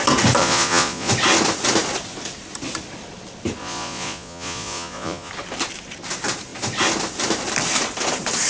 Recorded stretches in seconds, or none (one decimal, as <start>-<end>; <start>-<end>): 0.0-0.4; 1.1-3.6; 5.3-8.5